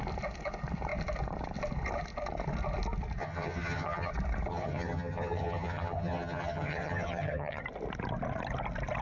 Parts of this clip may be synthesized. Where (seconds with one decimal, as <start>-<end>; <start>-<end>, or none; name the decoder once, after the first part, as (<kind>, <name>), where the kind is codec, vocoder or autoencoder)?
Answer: 3.2-4.1 (vocoder, HiFi-GAN); 4.5-7.6